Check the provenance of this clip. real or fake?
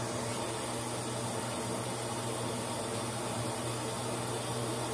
real